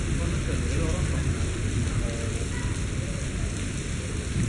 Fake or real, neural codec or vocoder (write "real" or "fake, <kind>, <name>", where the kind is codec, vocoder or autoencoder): real